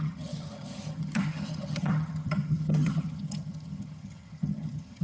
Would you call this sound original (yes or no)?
no